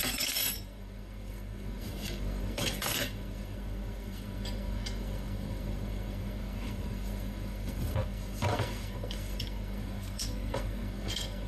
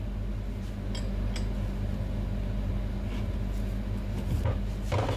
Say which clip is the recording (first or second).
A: second